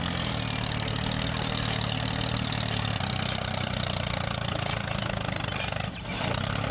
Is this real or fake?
real